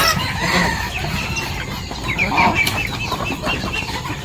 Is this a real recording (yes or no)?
yes